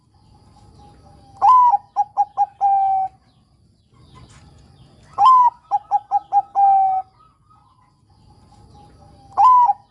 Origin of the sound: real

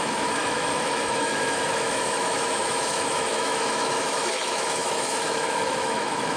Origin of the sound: fake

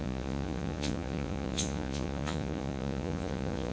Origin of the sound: fake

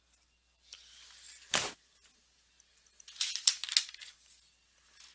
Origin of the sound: real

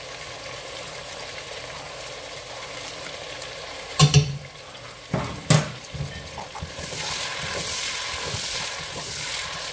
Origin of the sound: real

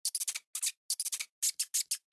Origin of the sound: real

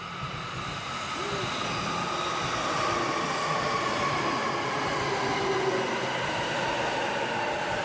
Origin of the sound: real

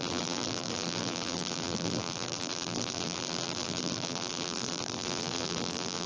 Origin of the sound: fake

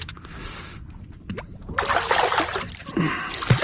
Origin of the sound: real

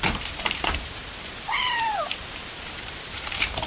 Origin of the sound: fake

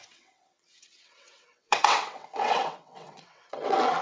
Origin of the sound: fake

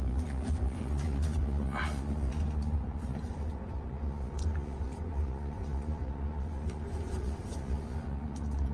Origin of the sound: fake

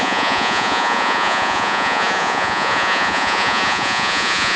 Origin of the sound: fake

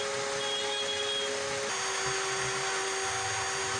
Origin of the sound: real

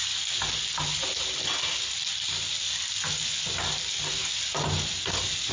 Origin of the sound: real